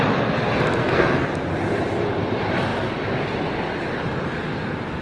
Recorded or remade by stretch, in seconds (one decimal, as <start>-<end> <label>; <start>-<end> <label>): 0.0-0.8 recorded; 0.8-1.3 remade; 1.3-5.0 recorded